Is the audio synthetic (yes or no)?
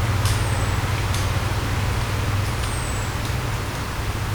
no